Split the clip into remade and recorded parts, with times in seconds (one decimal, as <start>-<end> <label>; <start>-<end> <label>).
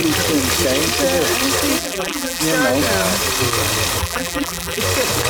0.0-1.8 recorded; 1.8-2.4 remade; 2.4-4.0 recorded; 4.0-4.8 remade; 4.8-5.3 recorded